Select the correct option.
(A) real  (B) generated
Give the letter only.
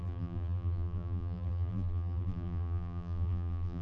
B